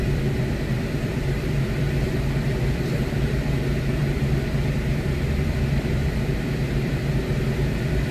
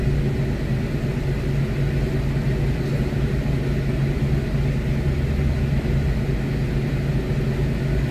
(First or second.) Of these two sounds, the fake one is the first